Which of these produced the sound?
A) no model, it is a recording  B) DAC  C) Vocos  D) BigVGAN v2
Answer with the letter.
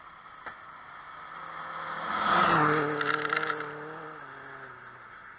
A